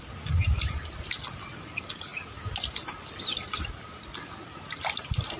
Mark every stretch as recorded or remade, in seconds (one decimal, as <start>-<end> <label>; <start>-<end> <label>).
0.0-5.4 recorded